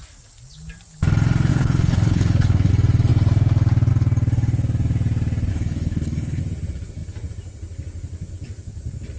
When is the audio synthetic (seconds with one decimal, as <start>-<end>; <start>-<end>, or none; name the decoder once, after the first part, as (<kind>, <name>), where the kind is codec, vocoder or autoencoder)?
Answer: 1.5-2.7 (codec, HILCodec); 5.5-6.4